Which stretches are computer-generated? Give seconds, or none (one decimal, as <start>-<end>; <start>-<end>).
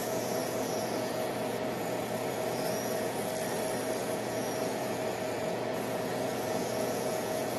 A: 0.0-3.3; 4.0-7.6